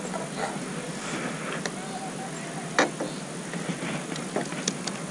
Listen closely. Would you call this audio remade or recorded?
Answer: recorded